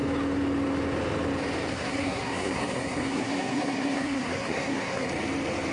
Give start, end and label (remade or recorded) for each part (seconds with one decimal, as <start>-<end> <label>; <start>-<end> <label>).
0.0-1.7 recorded; 1.7-5.1 remade; 5.1-5.7 recorded